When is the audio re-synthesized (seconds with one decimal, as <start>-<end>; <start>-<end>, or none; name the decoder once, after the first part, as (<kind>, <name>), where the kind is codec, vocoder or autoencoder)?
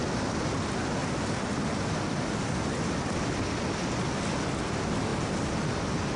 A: 5.1-5.7 (vocoder, BigVGAN v2)